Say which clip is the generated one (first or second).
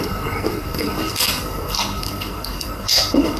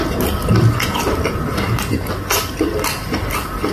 first